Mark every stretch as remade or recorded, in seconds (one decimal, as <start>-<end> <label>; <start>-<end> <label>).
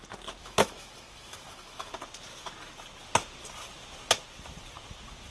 0.0-0.4 recorded; 0.4-1.9 remade; 1.9-5.3 recorded